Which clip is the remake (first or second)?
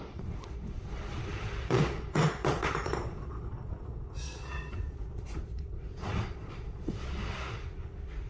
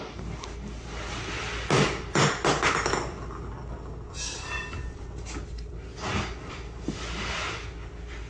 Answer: first